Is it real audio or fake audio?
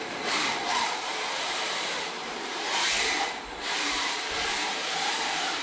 fake